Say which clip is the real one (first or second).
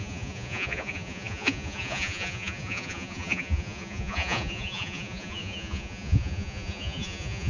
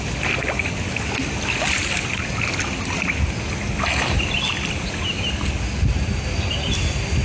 second